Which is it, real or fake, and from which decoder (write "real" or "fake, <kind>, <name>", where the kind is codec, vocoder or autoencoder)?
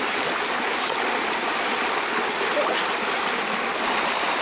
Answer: real